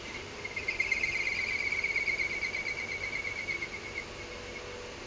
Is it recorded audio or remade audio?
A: recorded